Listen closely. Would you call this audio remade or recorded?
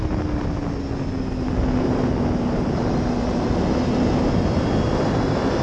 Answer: recorded